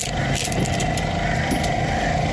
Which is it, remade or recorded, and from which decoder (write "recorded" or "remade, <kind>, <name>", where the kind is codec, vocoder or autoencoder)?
recorded